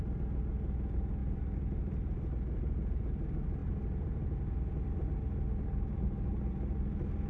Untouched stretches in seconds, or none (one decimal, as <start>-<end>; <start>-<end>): 0.0-7.3